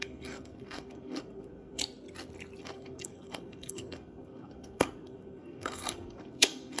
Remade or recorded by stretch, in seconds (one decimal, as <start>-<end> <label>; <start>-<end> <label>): 0.0-1.8 remade; 1.8-2.6 recorded; 2.6-6.8 remade